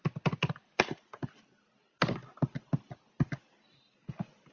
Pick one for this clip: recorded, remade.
recorded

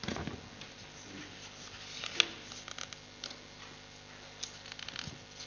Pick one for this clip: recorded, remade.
recorded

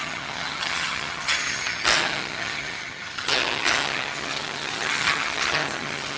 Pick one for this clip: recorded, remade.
remade